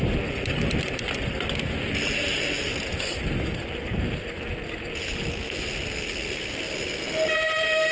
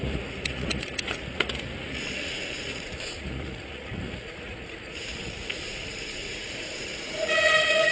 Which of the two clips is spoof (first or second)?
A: second